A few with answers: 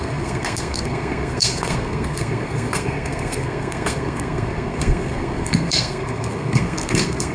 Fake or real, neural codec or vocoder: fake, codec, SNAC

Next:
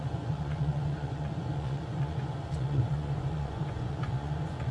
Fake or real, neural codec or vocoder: fake, vocoder, Vocos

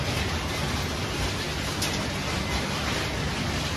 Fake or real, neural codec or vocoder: real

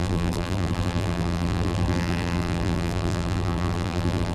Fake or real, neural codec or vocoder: fake, vocoder, BigVGAN v2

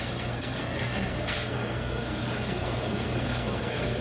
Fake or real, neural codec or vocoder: fake, codec, SNAC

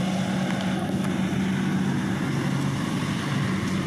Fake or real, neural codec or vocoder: real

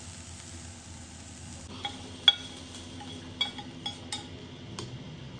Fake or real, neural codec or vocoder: real